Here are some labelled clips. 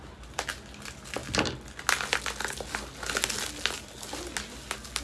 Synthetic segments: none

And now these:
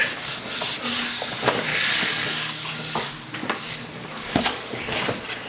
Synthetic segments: 1.7-5.0 (codec, DAC)

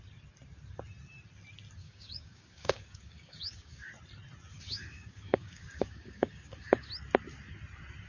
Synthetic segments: 1.8-3.9 (codec, DAC); 4.5-6.9

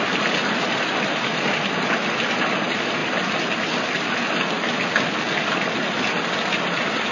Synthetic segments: none

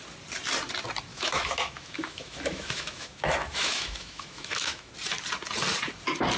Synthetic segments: 1.1-4.9 (autoencoder, DAC-VAE)

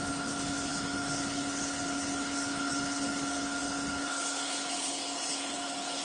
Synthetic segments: 0.0-6.0 (codec, HILCodec)

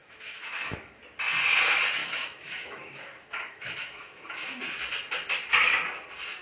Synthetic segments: 0.0-1.0 (autoencoder, DAC-VAE); 2.0-4.6

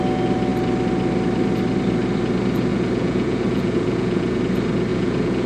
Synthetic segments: 2.7-4.4 (vocoder, Vocos); 4.9-5.5